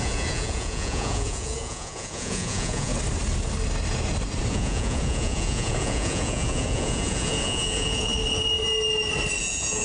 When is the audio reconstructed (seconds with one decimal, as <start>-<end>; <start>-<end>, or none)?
0.0-2.9; 4.5-8.1; 9.4-9.8